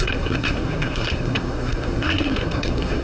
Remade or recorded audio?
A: remade